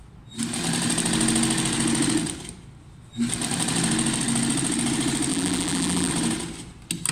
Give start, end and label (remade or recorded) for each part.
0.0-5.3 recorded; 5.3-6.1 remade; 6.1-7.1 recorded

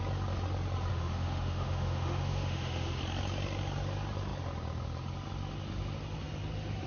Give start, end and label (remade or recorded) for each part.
0.0-0.9 recorded; 0.9-3.0 remade; 3.0-6.9 recorded

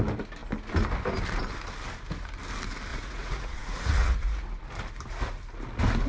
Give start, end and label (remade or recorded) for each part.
0.0-2.9 recorded; 2.9-4.4 remade; 4.4-6.1 recorded

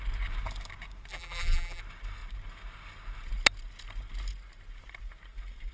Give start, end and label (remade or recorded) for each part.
0.0-1.1 recorded; 1.1-1.8 remade; 1.8-5.7 recorded

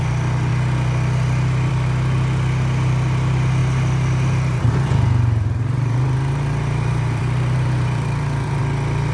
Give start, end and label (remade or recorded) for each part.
0.0-3.6 recorded; 3.6-8.6 remade; 8.6-9.1 recorded

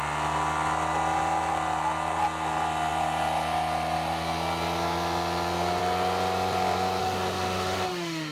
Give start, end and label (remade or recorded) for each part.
0.0-7.0 recorded; 7.0-8.3 remade

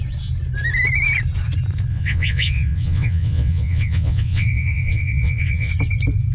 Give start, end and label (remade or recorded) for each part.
0.0-1.9 recorded; 1.9-5.7 remade; 5.7-6.3 recorded

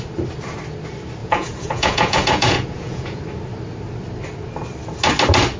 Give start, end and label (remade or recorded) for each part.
0.0-1.2 recorded; 1.2-3.2 remade; 3.2-5.6 recorded